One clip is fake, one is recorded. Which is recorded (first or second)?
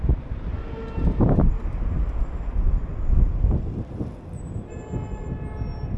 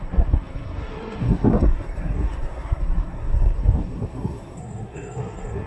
first